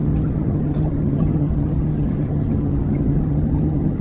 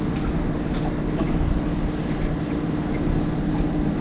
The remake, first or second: first